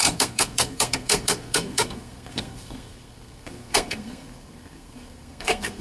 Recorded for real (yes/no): no